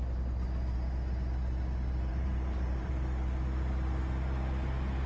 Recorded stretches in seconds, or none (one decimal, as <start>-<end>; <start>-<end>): 0.0-2.1; 2.9-5.1